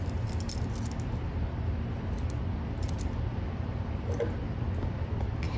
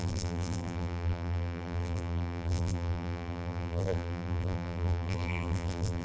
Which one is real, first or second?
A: first